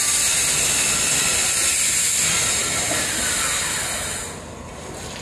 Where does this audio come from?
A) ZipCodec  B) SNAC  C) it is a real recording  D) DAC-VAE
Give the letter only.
C